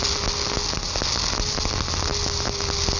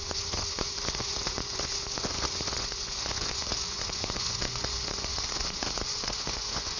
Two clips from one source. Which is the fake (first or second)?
second